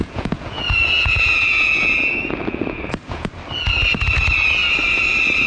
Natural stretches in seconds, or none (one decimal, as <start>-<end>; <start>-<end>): 3.3-5.5